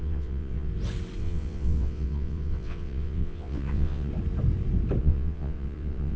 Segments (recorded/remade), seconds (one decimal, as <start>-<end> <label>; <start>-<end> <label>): 0.0-0.7 remade; 0.7-1.2 recorded; 1.2-4.1 remade; 4.1-5.0 recorded; 5.0-6.2 remade